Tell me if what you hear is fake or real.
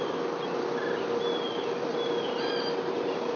real